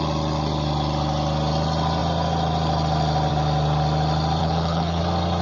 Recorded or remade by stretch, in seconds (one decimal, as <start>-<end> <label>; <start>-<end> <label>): 0.0-4.4 recorded; 4.4-5.0 remade; 5.0-5.4 recorded